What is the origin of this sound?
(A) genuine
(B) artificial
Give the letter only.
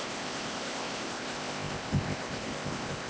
B